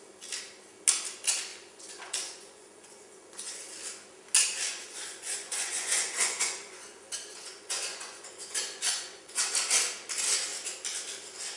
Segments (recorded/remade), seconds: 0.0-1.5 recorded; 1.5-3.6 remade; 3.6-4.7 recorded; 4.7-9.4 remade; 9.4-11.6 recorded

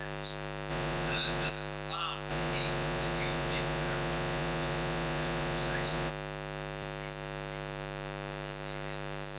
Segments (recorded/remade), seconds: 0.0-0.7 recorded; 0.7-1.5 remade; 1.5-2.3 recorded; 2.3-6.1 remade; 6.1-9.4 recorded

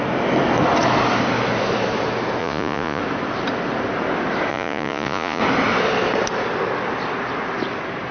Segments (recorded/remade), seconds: 0.0-2.4 recorded; 2.4-3.0 remade; 3.0-4.5 recorded; 4.5-5.4 remade; 5.4-8.1 recorded

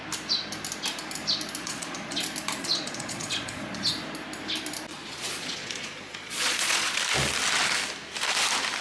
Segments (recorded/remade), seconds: 0.0-1.6 recorded; 1.6-2.2 remade; 2.2-2.6 recorded; 2.6-3.9 remade; 3.9-4.9 recorded; 4.9-7.0 remade; 7.0-8.8 recorded

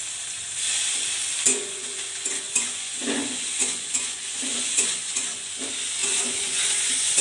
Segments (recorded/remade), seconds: 0.0-1.5 recorded; 1.5-5.6 remade; 5.6-6.0 recorded; 6.0-7.2 remade